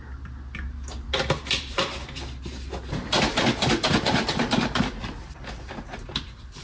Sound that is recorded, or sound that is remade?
recorded